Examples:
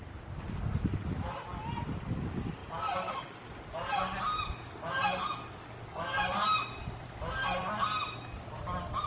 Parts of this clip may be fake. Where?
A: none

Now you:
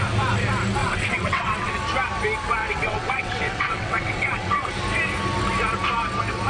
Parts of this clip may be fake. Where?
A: 0.8-1.7 (vocoder, WaveNeXt); 2.6-4.7

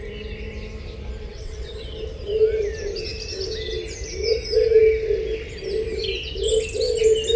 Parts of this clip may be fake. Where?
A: 1.3-1.8 (vocoder, WaveNeXt)